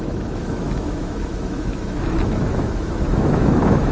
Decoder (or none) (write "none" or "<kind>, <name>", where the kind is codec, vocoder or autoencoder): autoencoder, DAC-VAE